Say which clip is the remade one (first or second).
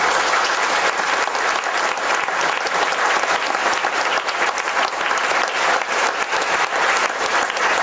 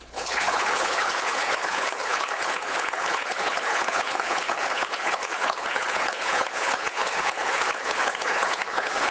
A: second